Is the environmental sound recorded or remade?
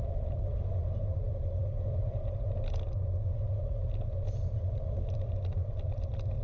recorded